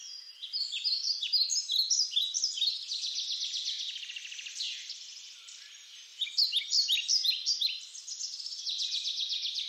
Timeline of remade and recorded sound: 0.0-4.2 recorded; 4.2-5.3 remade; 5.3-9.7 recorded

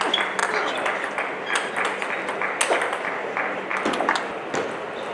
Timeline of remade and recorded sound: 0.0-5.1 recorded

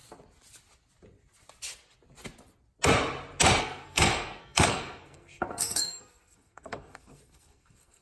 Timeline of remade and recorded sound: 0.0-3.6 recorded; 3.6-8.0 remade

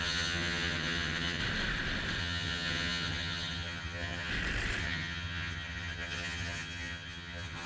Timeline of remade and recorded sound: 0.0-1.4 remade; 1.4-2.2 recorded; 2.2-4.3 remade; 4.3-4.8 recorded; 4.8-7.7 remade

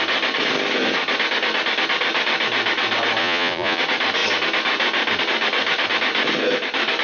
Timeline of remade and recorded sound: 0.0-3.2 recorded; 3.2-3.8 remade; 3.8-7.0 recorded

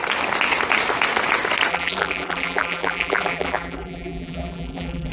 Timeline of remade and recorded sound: 0.0-1.7 recorded; 1.7-5.1 remade